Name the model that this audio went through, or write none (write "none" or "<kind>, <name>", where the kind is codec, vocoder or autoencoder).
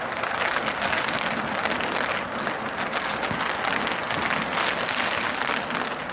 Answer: none